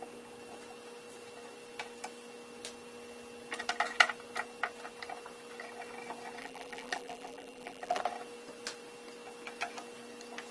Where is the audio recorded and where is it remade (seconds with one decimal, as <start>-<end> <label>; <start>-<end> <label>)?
0.0-6.4 recorded; 6.4-8.0 remade; 8.0-10.5 recorded